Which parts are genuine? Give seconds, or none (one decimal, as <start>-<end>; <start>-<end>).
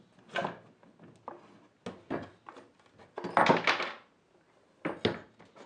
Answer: 0.0-5.7